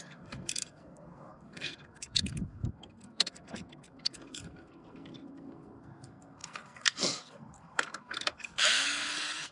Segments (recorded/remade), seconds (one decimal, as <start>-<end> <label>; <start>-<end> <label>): 0.0-9.5 remade